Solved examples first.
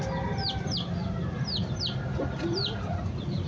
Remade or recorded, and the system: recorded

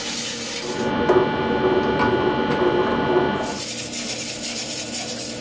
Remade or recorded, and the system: recorded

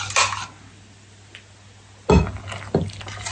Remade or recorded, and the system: recorded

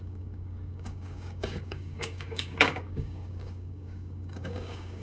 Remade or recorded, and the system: remade, codec, DAC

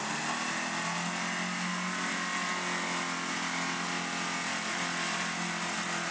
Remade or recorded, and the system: recorded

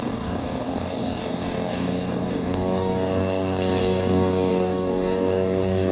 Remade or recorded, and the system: remade, codec, DAC